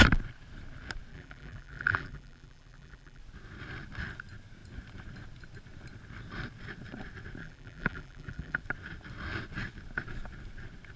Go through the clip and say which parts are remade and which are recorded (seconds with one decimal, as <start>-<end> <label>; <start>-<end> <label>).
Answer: 0.0-1.1 recorded; 1.1-3.2 remade; 3.2-7.4 recorded; 7.4-8.6 remade; 8.6-11.0 recorded